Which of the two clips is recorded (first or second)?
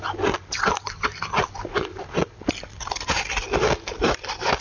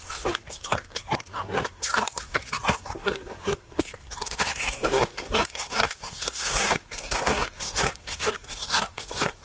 first